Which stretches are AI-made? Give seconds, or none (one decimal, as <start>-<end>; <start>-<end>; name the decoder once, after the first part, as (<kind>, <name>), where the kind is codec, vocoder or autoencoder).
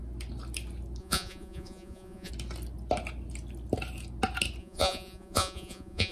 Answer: 1.0-2.3 (vocoder, Vocos); 4.6-6.1